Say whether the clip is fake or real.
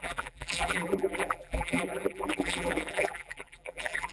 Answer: fake